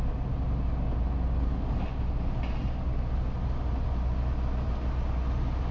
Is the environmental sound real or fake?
real